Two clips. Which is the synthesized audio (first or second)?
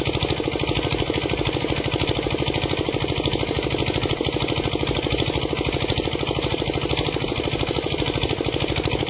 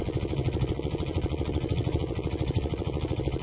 second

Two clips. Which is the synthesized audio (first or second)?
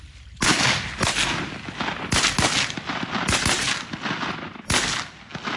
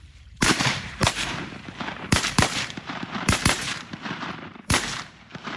second